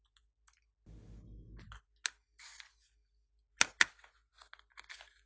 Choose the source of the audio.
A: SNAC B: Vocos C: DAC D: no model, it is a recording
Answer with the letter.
D